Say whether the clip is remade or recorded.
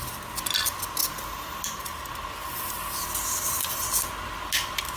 recorded